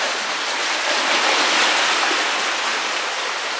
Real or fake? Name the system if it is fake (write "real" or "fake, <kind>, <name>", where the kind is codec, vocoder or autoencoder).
real